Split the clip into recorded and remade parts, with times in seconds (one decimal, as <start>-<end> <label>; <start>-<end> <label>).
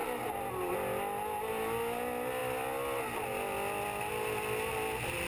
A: 0.0-5.3 recorded